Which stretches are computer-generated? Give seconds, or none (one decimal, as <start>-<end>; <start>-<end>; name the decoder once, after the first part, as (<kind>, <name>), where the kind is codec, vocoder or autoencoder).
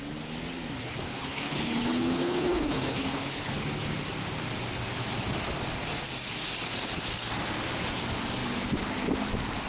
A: 0.8-3.5 (codec, HILCodec)